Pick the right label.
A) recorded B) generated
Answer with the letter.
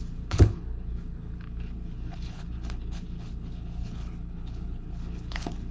B